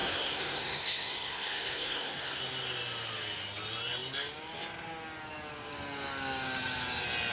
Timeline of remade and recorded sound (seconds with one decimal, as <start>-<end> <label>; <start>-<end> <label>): 0.0-2.4 remade; 2.4-7.3 recorded